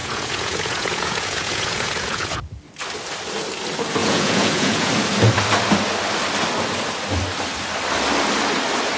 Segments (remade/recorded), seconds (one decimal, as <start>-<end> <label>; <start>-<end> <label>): 0.0-2.4 remade; 2.4-4.0 recorded; 4.0-4.9 remade; 4.9-9.0 recorded